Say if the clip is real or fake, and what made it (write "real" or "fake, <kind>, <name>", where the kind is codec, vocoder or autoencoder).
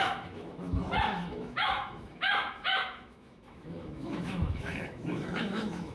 fake, autoencoder, DAC-VAE